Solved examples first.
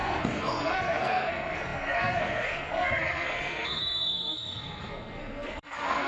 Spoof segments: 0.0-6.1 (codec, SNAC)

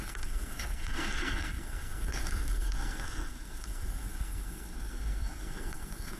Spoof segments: 0.0-6.2 (codec, SNAC)

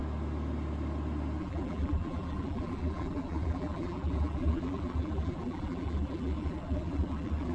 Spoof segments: 1.4-7.5 (vocoder, BigVGAN v2)

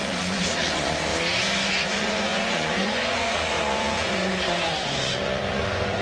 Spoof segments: 0.0-1.1 (vocoder, Vocos); 1.7-6.0